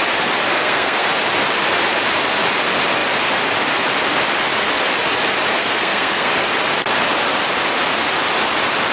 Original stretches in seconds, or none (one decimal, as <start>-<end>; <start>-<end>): 0.0-0.5; 1.1-5.6; 6.3-8.9